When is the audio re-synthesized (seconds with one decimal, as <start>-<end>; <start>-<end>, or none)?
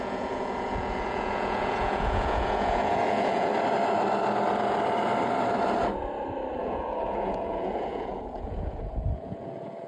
0.0-3.5; 6.6-9.9